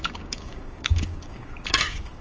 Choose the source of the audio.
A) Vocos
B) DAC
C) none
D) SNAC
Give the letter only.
B